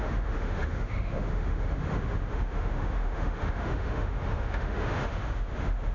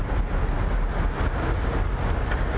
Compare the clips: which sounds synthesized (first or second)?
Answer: first